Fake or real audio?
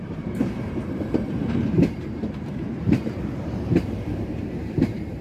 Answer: fake